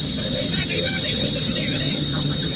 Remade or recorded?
remade